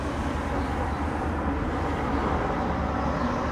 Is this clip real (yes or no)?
yes